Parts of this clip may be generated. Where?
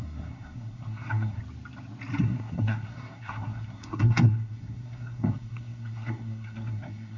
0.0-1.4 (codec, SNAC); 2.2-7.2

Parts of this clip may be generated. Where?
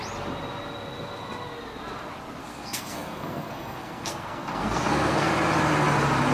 2.4-5.3 (codec, SNAC)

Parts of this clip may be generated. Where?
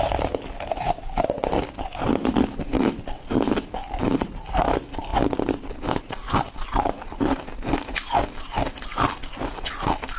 none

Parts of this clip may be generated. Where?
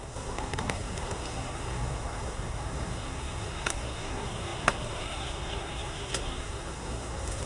0.0-7.5 (codec, SNAC)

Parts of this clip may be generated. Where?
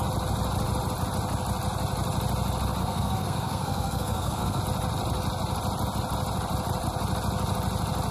2.8-4.6 (codec, SNAC)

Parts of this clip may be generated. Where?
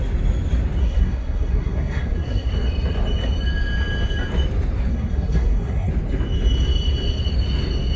0.8-2.5 (codec, SNAC); 4.9-5.9